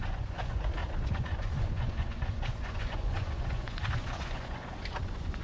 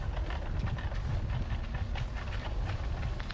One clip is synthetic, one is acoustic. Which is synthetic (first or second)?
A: first